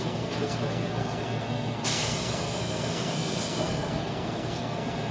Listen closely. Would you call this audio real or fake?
fake